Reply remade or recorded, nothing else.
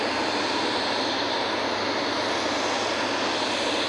recorded